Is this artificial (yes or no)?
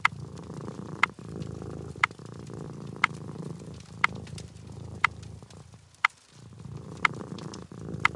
yes